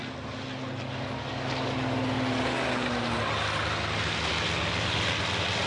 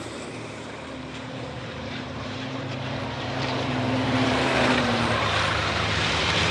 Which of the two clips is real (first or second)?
first